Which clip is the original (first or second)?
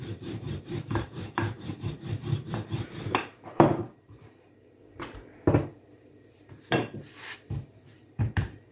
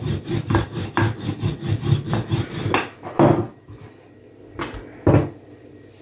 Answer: second